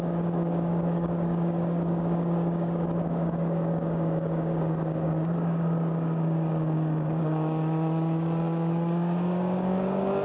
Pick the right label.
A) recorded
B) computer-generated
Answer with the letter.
B